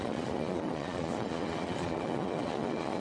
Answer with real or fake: fake